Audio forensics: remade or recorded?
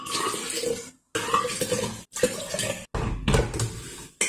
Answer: recorded